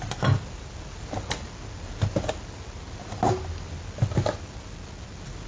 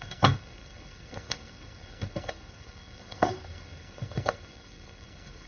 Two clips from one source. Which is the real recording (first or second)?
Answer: first